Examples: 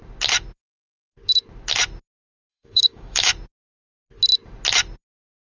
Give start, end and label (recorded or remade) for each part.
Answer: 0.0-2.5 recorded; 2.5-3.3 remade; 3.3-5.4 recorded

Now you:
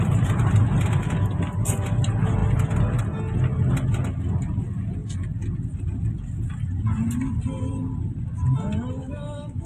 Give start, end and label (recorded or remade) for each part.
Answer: 0.0-9.0 recorded; 9.0-9.7 remade

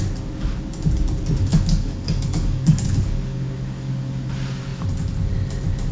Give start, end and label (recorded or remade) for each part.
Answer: 0.0-1.5 recorded; 1.5-4.3 remade; 4.3-5.9 recorded

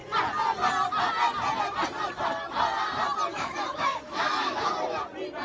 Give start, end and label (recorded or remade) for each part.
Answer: 0.0-3.3 recorded; 3.3-4.7 remade; 4.7-5.4 recorded

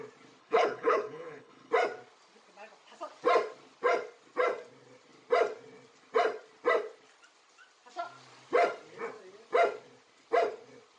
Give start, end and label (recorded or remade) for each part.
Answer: 0.0-0.4 recorded; 0.4-1.7 remade; 1.7-11.0 recorded

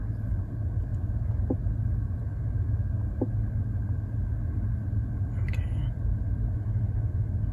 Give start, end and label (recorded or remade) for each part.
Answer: 0.0-7.5 recorded

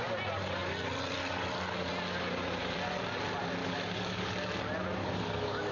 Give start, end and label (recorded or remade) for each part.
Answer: 0.0-3.6 recorded; 3.6-4.3 remade; 4.3-5.0 recorded; 5.0-5.7 remade

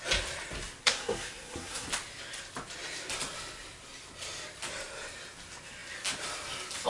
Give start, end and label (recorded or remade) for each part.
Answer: 0.0-0.8 recorded; 0.8-1.9 remade; 1.9-6.9 recorded